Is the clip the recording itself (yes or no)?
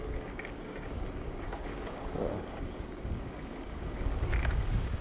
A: no